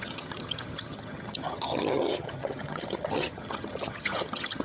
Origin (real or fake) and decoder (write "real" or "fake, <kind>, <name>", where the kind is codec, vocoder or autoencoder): fake, vocoder, HiFi-GAN